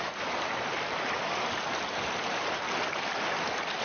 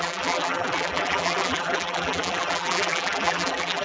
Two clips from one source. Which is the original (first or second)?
first